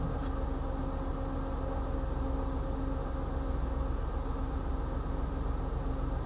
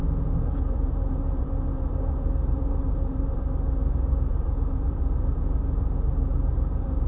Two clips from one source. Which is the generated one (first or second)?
second